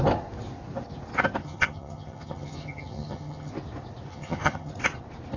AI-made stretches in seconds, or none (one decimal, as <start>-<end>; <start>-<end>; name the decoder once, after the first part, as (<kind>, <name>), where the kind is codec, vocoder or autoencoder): 1.4-3.5 (vocoder, HiFi-GAN); 4.1-4.7